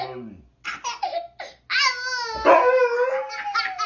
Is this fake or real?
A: real